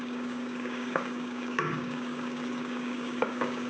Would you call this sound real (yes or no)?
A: no